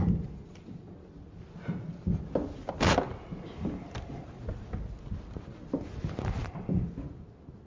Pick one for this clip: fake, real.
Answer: real